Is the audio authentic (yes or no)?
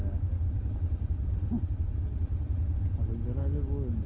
yes